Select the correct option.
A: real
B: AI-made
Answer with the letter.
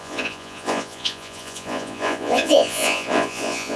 B